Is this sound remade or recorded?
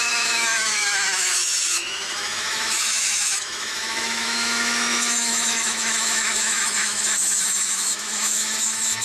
remade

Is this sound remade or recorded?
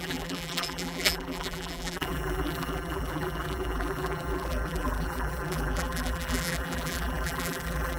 remade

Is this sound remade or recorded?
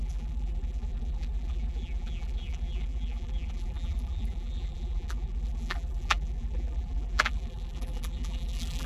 remade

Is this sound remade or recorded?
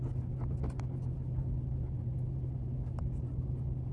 recorded